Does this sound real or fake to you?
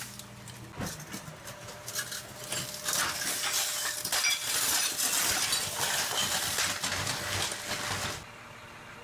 real